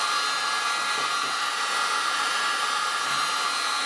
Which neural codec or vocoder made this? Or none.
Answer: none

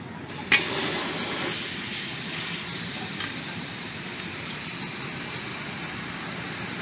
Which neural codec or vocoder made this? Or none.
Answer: none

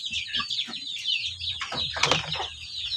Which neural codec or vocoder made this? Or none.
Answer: none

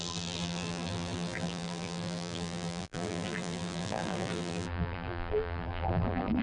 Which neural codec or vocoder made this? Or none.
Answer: vocoder, BigVGAN v2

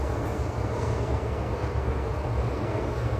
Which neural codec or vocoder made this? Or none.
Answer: codec, SNAC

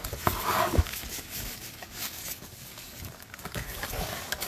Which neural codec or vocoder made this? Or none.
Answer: codec, DAC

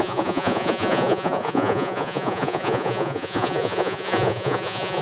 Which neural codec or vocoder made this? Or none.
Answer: vocoder, Vocos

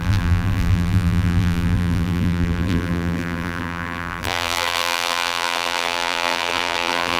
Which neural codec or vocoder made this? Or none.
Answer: vocoder, BigVGAN v2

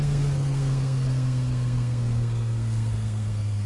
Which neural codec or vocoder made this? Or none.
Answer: codec, SNAC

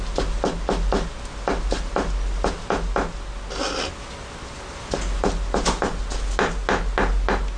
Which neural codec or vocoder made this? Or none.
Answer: none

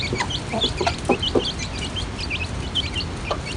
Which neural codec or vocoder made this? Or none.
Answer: vocoder, BigVGAN v2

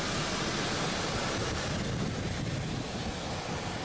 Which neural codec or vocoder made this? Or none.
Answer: none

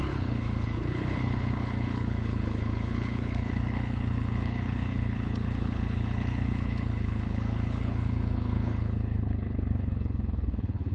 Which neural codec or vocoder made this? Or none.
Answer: codec, HILCodec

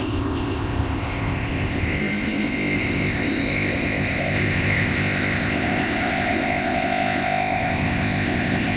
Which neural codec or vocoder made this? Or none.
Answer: codec, ZipCodec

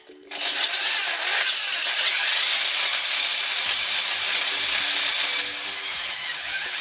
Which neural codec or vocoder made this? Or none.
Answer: none